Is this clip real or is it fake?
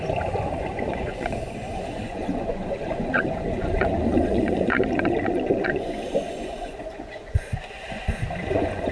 fake